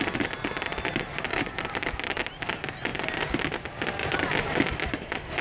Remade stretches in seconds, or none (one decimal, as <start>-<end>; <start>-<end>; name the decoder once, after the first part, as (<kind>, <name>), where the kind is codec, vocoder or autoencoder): 1.3-2.4 (vocoder, BigVGAN v2); 4.0-4.6